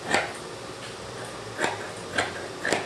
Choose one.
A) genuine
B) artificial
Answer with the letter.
A